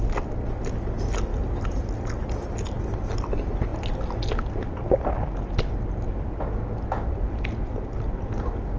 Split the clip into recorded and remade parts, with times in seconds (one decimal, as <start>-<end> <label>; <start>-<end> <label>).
0.0-8.8 recorded